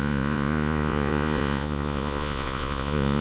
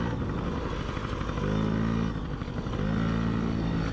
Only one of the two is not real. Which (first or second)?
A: first